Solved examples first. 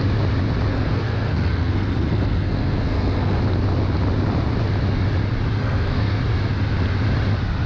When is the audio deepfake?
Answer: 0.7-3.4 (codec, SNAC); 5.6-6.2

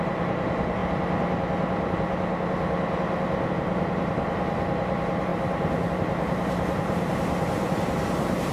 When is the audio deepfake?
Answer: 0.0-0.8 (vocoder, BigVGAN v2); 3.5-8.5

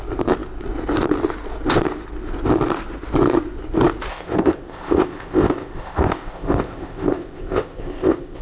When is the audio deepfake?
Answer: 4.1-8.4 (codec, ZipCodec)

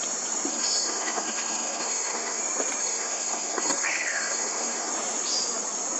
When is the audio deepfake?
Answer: 0.5-2.4 (codec, SNAC); 2.8-4.9